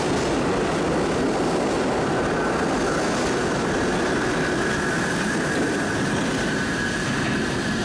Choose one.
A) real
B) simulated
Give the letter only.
A